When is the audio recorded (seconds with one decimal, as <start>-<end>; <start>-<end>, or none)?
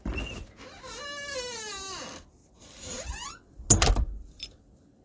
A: 0.0-2.4; 3.3-5.0